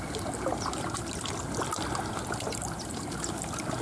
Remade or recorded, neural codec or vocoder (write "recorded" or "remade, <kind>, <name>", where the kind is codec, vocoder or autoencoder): recorded